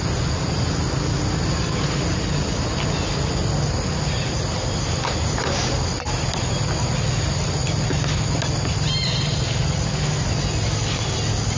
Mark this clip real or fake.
real